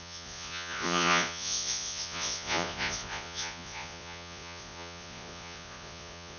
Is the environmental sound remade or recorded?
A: remade